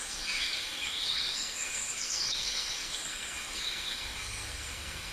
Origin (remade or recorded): remade